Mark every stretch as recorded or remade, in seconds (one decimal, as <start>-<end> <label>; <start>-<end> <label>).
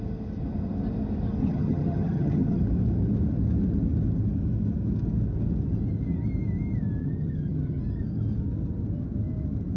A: 0.0-1.4 recorded; 1.4-2.6 remade; 2.6-7.0 recorded; 7.0-7.8 remade; 7.8-9.8 recorded